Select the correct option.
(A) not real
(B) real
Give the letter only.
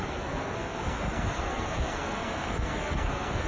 A